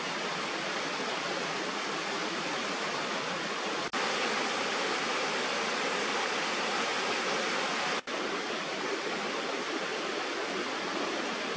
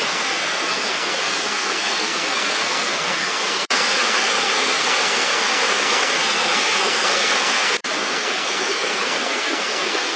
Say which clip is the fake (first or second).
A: second